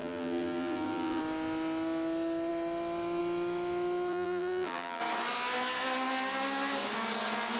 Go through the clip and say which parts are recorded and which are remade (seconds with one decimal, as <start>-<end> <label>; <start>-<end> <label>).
0.0-1.2 remade; 1.2-4.1 recorded; 4.1-5.0 remade; 5.0-7.6 recorded